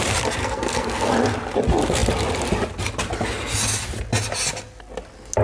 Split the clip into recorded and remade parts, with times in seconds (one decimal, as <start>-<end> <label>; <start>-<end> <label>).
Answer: 0.0-0.4 recorded; 0.4-1.1 remade; 1.1-5.4 recorded